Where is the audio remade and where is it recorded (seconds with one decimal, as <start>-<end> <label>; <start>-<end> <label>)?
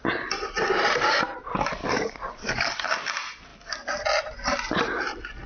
0.0-1.8 recorded; 1.8-2.9 remade; 2.9-5.5 recorded